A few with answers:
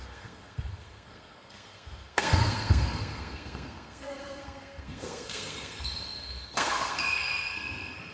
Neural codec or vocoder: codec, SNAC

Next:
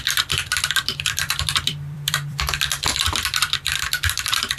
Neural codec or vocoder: vocoder, BigVGAN v2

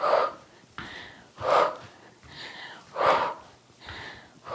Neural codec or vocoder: none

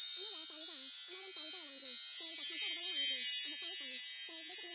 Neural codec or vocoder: none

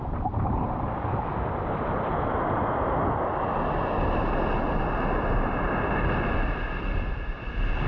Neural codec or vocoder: none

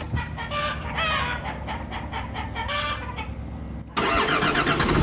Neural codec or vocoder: none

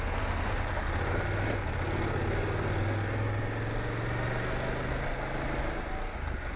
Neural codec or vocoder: none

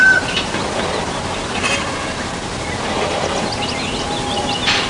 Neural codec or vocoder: none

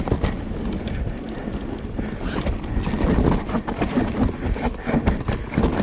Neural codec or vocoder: none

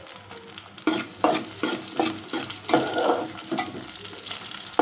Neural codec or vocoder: none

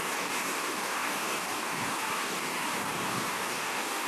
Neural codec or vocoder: codec, DAC